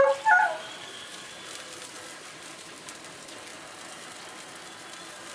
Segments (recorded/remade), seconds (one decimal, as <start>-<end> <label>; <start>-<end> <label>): 0.0-0.8 recorded; 0.8-1.3 remade; 1.3-5.3 recorded